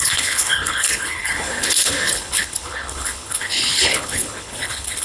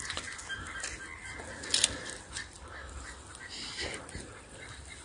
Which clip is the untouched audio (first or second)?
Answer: second